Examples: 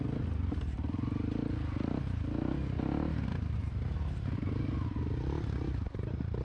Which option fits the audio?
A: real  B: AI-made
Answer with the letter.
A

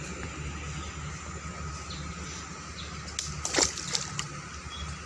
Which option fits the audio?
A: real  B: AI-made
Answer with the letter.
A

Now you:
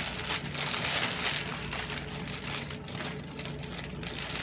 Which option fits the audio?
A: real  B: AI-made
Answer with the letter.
A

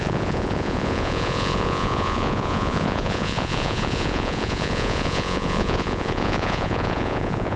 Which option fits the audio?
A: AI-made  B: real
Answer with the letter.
A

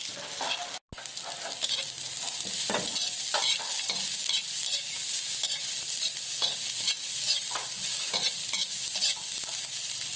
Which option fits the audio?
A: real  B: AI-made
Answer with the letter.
A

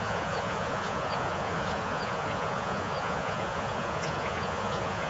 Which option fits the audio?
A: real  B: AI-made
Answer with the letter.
B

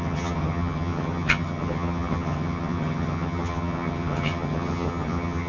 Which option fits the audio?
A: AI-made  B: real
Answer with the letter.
A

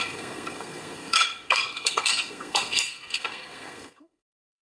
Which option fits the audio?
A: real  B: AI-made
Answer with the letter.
B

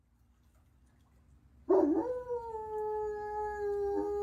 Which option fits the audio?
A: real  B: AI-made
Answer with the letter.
A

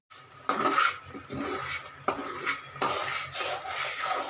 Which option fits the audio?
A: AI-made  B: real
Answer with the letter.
B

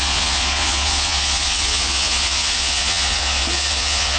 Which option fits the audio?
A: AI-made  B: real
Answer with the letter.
A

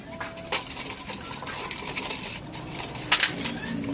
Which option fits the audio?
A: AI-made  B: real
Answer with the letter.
B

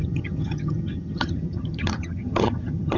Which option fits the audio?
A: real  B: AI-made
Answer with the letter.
B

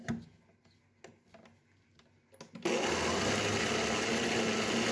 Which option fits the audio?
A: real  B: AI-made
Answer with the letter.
A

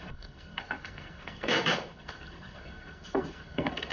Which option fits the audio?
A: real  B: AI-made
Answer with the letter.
B